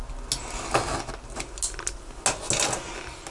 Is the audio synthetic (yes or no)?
no